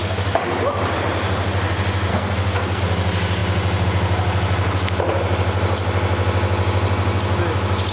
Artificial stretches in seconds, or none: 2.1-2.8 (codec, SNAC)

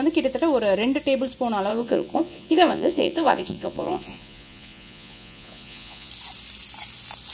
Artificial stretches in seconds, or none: 1.7-6.1 (vocoder, Vocos)

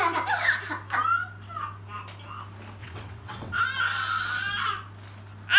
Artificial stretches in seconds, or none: 2.8-3.6 (vocoder, WaveNeXt)

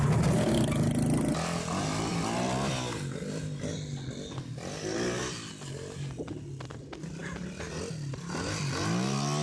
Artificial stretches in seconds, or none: 7.2-7.8 (vocoder, BigVGAN v2)

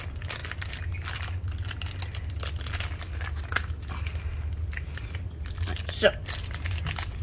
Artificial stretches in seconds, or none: none

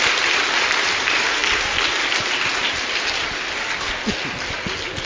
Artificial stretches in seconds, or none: none